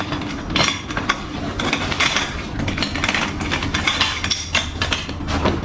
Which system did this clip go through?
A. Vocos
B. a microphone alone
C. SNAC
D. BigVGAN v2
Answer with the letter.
B